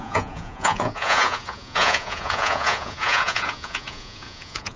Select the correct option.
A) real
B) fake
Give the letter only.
B